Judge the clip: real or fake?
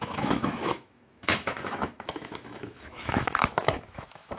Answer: fake